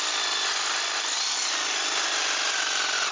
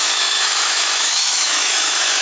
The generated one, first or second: second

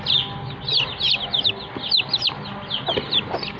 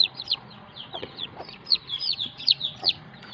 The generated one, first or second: second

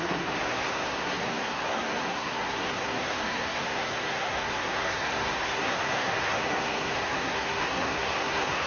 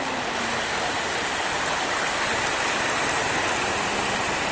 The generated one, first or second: first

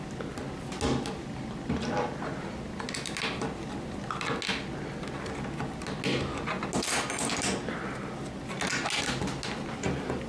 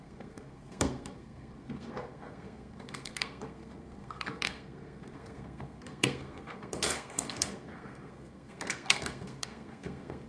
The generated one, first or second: second